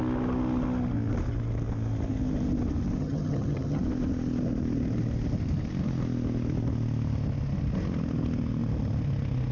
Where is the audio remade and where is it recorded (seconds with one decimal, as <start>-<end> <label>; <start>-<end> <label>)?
0.0-3.0 recorded; 3.0-3.8 remade; 3.8-9.5 recorded